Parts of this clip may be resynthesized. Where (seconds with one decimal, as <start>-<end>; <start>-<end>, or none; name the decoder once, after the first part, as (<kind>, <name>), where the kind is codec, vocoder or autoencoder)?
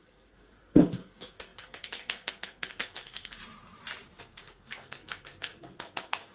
0.0-3.4 (codec, SNAC); 4.2-6.3